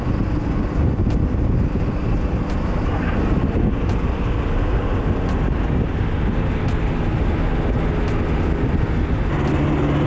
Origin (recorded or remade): recorded